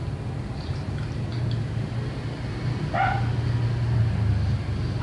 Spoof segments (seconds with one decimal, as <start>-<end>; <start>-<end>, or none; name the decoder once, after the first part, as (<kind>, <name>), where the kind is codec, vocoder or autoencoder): none